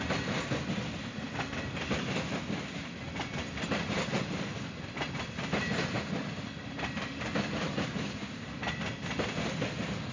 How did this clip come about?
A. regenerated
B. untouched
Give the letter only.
B